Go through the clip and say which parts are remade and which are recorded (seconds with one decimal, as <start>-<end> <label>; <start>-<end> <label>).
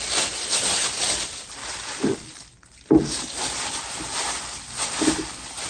0.0-5.7 recorded